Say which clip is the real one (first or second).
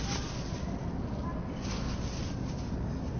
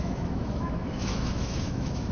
first